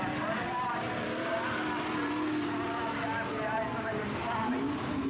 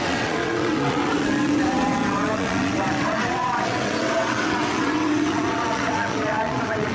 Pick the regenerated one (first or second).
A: second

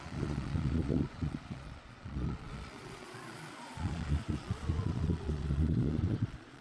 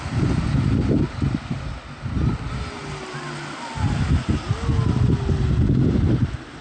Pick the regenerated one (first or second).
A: first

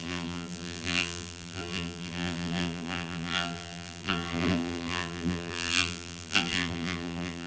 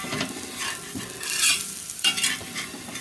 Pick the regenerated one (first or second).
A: first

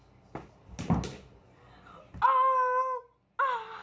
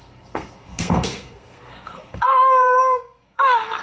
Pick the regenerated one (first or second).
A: second